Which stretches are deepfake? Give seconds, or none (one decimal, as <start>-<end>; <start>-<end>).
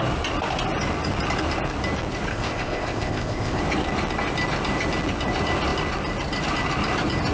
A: 2.3-3.6